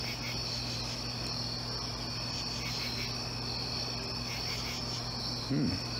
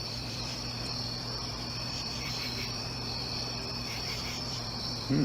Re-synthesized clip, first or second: second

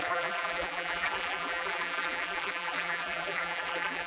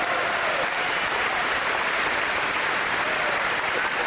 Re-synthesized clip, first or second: first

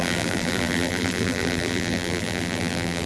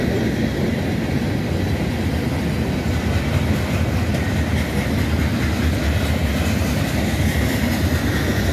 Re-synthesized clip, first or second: first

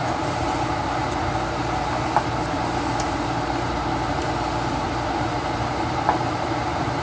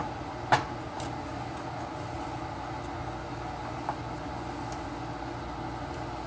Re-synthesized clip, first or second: first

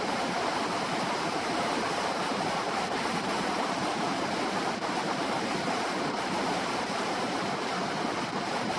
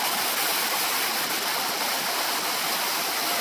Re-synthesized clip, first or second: first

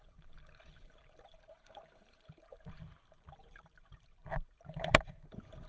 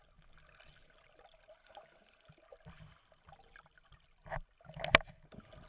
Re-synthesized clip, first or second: first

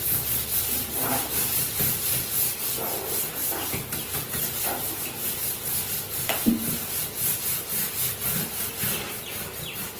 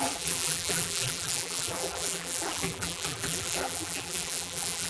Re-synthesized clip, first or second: second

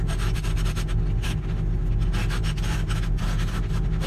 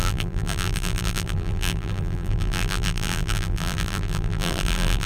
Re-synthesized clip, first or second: second